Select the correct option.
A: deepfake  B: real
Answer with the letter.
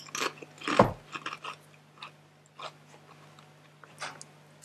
B